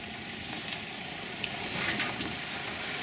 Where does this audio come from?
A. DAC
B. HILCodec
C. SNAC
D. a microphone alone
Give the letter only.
D